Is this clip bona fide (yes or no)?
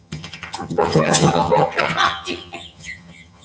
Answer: no